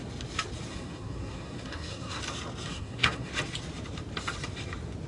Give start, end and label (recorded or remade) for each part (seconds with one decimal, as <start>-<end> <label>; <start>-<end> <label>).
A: 0.0-0.7 recorded; 0.7-2.2 remade; 2.2-2.7 recorded; 2.7-3.3 remade; 3.3-5.1 recorded